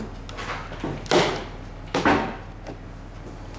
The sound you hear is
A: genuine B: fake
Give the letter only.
A